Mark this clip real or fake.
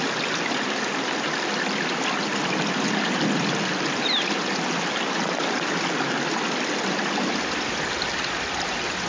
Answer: real